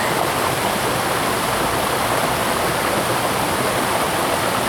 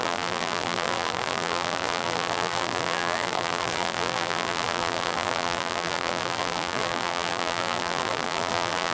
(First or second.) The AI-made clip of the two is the second